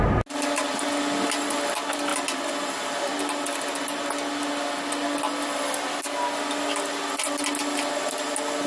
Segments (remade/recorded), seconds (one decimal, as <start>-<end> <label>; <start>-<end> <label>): 0.0-8.7 recorded